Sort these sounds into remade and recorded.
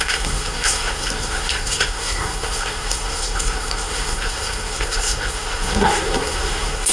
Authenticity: remade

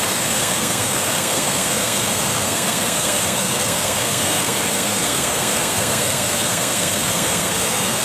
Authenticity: remade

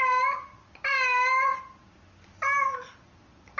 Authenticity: recorded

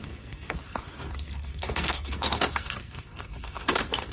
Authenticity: remade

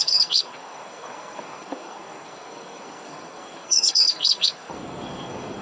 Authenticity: remade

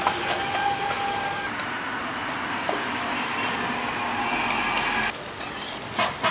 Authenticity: recorded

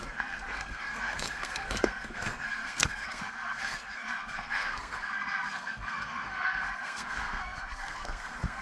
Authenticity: remade